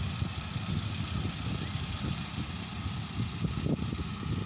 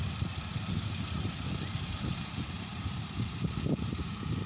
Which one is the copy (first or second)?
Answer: second